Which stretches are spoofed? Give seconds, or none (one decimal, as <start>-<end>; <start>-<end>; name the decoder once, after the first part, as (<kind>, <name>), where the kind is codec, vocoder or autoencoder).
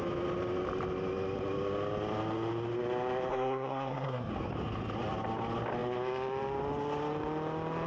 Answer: 3.3-4.3 (codec, SNAC)